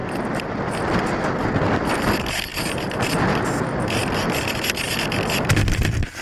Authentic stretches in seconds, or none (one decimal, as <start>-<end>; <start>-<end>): 0.0-6.2